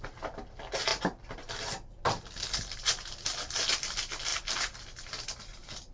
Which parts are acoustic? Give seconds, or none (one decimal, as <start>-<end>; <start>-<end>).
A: 0.0-5.9